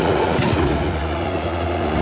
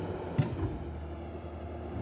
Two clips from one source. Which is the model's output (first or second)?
first